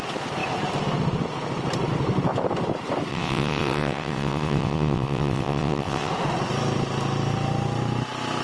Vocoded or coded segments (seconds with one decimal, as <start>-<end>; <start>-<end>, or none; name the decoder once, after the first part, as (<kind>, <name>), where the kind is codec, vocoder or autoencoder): 3.1-6.1 (vocoder, WaveNeXt)